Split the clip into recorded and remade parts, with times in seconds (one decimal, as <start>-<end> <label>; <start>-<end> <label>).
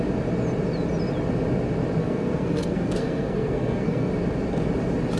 0.0-2.0 recorded; 2.0-4.1 remade; 4.1-5.2 recorded